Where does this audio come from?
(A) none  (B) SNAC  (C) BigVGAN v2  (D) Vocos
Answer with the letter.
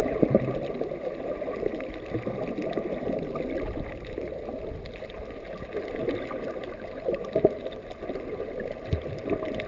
A